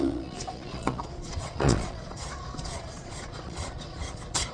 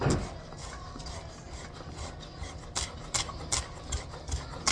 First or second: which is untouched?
second